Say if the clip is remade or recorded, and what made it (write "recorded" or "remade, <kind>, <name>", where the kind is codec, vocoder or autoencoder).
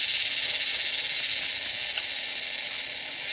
recorded